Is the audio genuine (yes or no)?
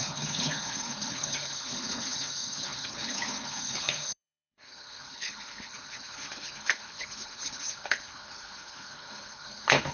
no